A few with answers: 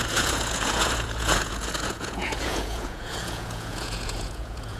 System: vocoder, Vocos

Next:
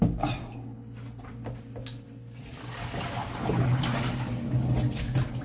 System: none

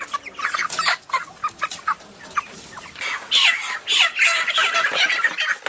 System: none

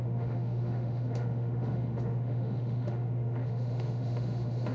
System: autoencoder, DAC-VAE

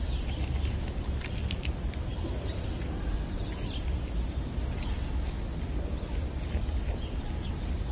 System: none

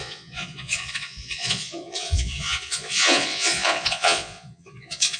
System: vocoder, Vocos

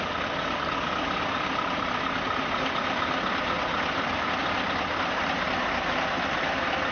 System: none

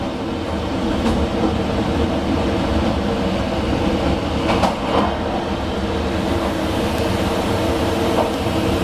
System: none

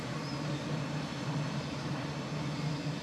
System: none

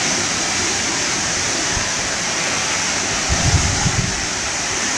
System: vocoder, BigVGAN v2